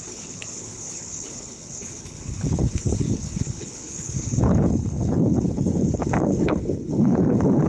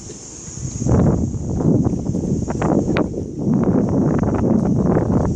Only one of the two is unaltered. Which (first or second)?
second